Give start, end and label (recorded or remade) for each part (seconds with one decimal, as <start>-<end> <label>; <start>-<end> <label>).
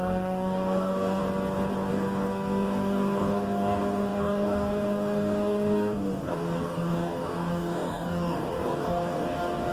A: 0.0-1.2 remade; 1.2-1.9 recorded; 1.9-9.7 remade